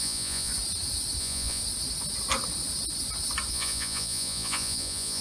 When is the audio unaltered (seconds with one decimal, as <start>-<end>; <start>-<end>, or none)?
0.5-1.2; 1.6-3.5